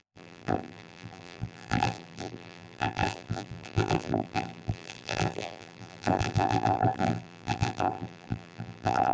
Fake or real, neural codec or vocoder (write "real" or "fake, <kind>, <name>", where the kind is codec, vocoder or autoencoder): fake, vocoder, BigVGAN v2